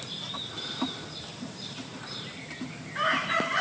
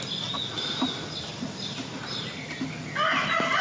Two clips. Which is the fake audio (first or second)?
first